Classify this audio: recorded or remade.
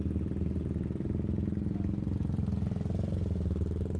recorded